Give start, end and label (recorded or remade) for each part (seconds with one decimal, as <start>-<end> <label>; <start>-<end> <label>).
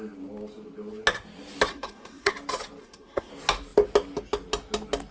0.0-1.7 recorded; 1.7-2.3 remade; 2.3-2.8 recorded; 2.8-3.3 remade; 3.3-5.1 recorded